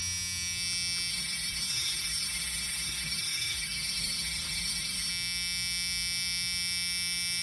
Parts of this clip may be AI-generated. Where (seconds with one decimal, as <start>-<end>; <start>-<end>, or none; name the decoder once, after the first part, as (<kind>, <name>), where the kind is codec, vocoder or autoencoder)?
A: 1.1-5.1 (codec, SNAC)